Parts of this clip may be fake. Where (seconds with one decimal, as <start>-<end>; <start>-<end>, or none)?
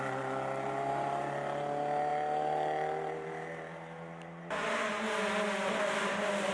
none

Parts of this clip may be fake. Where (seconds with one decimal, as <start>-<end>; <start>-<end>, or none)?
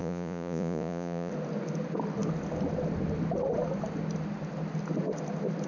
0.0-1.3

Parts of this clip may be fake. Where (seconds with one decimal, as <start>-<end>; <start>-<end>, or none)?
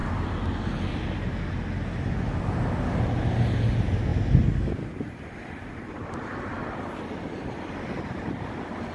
none